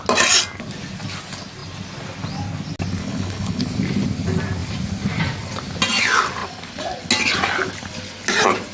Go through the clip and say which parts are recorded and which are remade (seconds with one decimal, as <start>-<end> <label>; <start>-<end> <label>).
0.0-3.0 recorded; 3.0-3.6 remade; 3.6-8.7 recorded